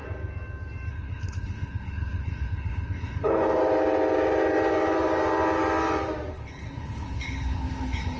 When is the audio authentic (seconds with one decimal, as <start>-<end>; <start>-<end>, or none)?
0.0-0.9; 3.6-6.3